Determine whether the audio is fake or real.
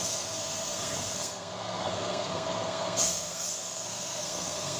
fake